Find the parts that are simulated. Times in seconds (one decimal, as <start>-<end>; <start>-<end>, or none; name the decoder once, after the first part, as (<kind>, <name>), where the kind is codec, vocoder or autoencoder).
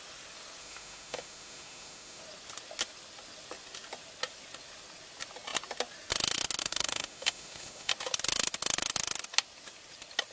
0.6-2.2 (autoencoder, DAC-VAE); 6.6-7.9